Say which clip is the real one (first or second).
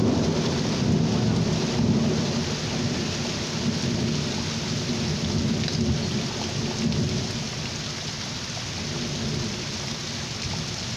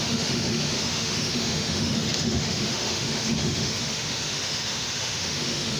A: first